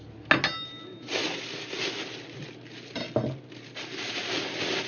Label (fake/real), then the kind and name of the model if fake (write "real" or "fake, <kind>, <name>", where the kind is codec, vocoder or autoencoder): real